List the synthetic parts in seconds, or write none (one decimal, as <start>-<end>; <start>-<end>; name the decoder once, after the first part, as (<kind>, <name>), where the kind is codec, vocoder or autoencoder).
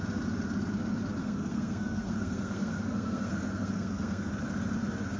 1.2-4.3 (codec, SNAC)